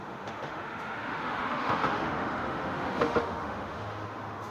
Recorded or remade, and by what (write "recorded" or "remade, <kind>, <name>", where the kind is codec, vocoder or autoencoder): remade, autoencoder, DAC-VAE